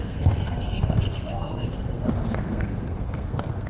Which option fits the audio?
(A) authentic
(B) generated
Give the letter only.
B